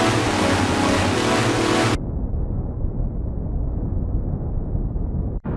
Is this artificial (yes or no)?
no